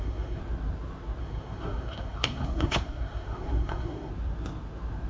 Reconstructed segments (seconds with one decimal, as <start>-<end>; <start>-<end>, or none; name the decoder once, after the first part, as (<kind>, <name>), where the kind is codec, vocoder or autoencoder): 0.0-0.4 (codec, SNAC); 1.2-4.1